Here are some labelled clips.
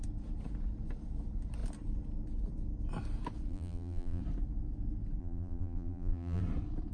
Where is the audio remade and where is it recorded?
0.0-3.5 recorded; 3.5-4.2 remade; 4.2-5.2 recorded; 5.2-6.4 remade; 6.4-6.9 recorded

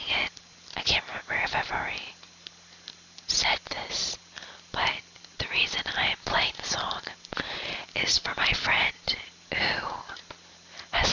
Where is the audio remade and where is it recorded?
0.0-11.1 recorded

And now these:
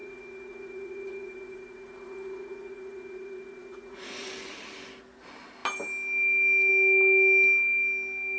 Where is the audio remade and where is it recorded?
0.0-4.3 remade; 4.3-8.4 recorded

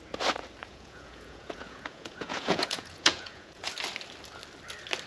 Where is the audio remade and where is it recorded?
0.0-0.6 recorded; 0.6-3.7 remade; 3.7-5.1 recorded

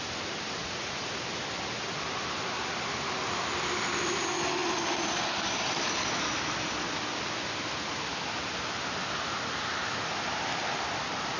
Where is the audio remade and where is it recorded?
0.0-0.6 recorded; 0.6-1.1 remade; 1.1-11.4 recorded